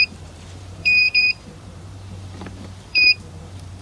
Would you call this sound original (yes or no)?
no